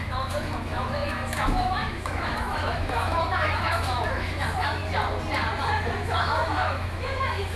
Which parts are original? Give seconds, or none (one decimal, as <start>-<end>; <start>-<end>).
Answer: 4.8-6.0